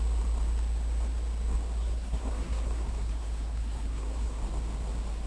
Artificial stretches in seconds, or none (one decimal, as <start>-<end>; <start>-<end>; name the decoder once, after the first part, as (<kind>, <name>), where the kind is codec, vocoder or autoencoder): 1.8-4.4 (codec, SNAC)